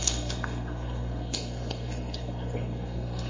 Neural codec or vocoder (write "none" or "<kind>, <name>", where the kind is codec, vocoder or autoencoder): codec, SNAC